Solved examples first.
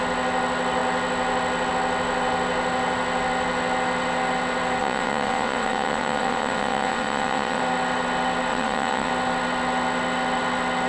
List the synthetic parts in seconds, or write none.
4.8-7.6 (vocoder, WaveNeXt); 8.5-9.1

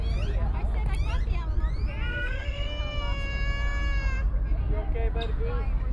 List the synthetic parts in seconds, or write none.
2.1-2.8 (codec, SNAC)

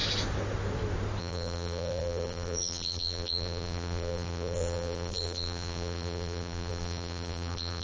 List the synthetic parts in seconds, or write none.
1.2-7.8 (vocoder, BigVGAN v2)

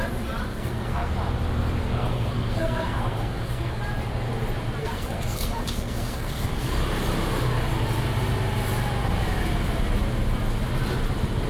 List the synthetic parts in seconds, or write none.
0.5-1.1 (codec, SNAC); 1.8-3.8; 4.8-6.7

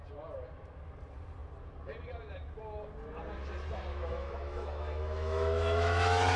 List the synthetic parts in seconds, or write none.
3.9-6.4 (autoencoder, DAC-VAE)